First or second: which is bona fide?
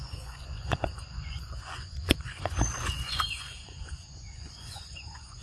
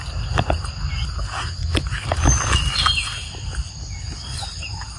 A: second